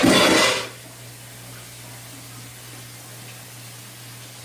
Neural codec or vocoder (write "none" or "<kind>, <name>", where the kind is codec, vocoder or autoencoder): none